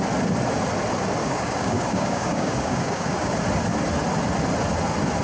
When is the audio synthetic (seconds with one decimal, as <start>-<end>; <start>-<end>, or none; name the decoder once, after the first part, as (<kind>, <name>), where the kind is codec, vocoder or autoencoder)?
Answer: 1.2-3.3 (codec, DAC)